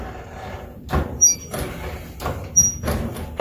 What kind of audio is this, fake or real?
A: real